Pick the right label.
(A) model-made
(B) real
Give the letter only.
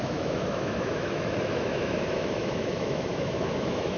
A